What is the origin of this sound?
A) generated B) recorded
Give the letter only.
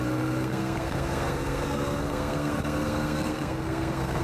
A